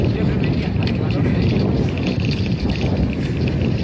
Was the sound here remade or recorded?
recorded